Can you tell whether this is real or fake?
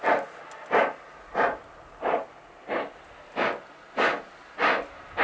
real